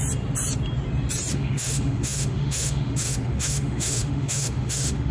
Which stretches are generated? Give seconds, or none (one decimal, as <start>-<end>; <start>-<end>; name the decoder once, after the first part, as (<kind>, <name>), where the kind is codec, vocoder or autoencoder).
1.3-5.1 (autoencoder, DAC-VAE)